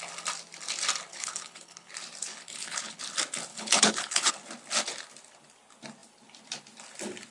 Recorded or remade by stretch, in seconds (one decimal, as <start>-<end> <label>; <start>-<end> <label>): 0.0-1.1 recorded; 1.1-1.9 remade; 1.9-2.3 recorded; 2.3-3.0 remade; 3.0-3.5 recorded; 3.5-4.3 remade; 4.3-7.3 recorded